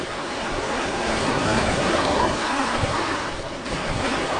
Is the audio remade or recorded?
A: remade